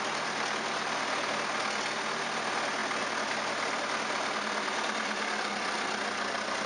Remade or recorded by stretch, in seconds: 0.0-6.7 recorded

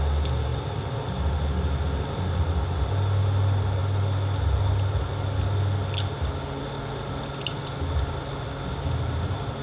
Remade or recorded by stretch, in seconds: 0.0-9.6 recorded

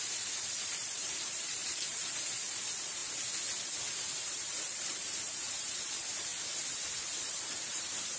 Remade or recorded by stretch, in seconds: 0.0-3.0 remade; 3.0-3.9 recorded; 3.9-6.3 remade; 6.3-7.2 recorded; 7.2-8.2 remade

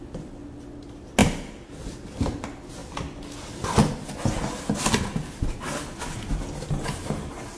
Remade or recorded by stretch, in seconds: 0.0-7.6 recorded

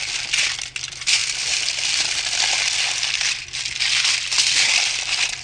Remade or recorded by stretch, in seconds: 0.0-5.4 recorded

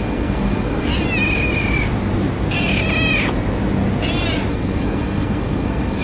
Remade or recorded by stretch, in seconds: 0.0-0.9 remade; 0.9-4.5 recorded; 4.5-6.0 remade

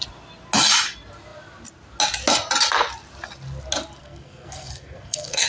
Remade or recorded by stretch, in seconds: 0.0-4.0 recorded; 4.0-5.5 remade

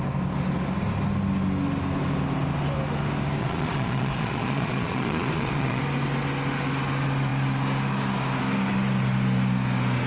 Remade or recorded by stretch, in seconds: 0.0-3.4 recorded; 3.4-5.8 remade; 5.8-10.1 recorded